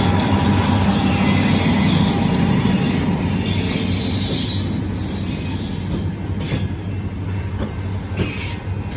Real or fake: real